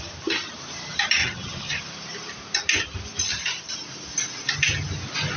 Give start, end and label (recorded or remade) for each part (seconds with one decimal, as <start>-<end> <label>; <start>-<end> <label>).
0.0-1.2 recorded; 1.2-1.8 remade; 1.8-5.4 recorded